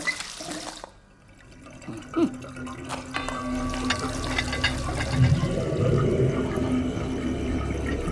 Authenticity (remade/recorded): recorded